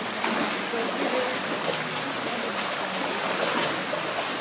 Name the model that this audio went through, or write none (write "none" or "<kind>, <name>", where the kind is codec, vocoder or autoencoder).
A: none